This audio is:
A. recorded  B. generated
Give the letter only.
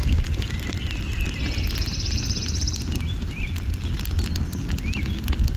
A